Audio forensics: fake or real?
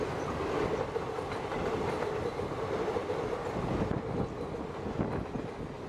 real